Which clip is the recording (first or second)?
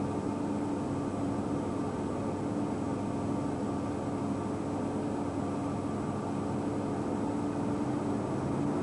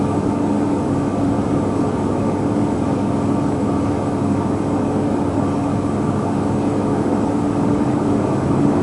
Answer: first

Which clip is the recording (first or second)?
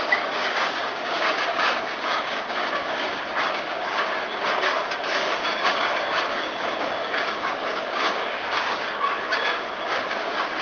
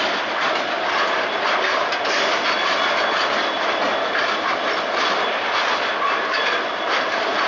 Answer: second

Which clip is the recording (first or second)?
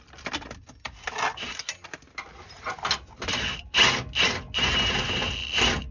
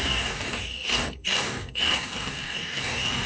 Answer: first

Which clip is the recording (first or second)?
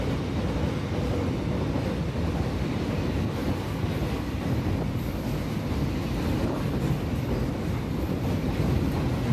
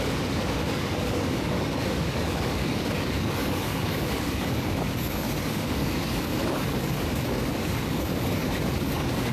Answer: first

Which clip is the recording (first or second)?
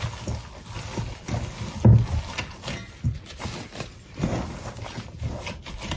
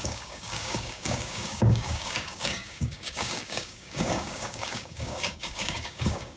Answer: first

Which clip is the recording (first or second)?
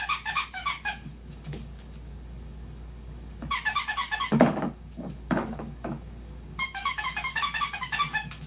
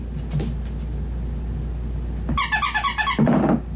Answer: second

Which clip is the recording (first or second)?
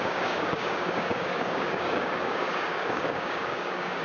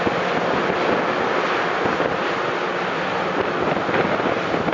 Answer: second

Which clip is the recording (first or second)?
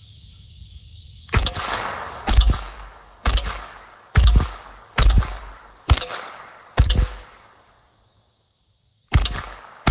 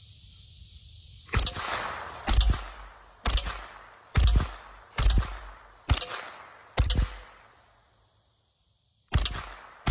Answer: second